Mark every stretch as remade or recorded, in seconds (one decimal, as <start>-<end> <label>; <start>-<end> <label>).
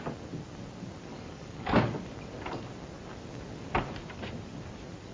0.0-1.1 recorded; 1.1-1.8 remade; 1.8-5.1 recorded